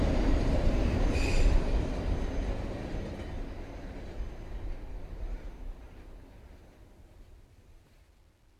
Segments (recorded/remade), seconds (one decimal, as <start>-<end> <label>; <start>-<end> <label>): 0.0-8.6 recorded